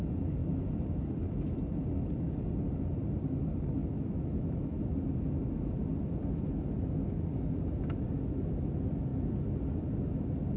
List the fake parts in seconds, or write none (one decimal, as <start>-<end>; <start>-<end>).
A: 3.8-4.8

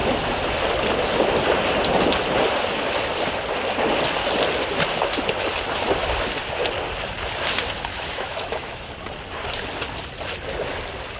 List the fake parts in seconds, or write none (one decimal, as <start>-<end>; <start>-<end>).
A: 7.9-8.9

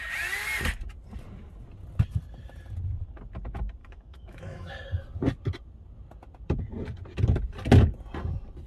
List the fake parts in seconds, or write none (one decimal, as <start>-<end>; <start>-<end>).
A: 3.8-4.7

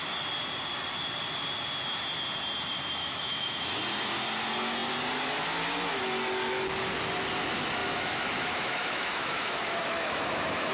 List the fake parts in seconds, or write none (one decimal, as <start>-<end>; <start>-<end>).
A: 3.0-3.6; 7.8-10.7

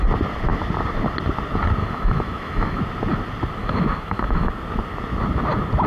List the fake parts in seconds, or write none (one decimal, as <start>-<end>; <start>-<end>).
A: 1.8-2.8; 3.6-4.5

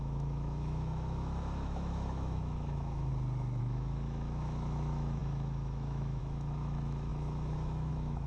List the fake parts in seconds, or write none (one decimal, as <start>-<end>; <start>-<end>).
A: 0.0-3.1; 3.6-8.3

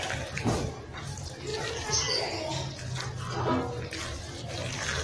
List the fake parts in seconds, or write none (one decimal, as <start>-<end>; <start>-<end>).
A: none